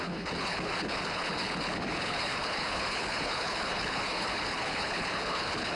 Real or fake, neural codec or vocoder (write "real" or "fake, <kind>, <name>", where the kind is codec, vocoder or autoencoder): fake, codec, HILCodec